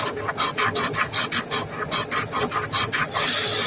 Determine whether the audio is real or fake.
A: real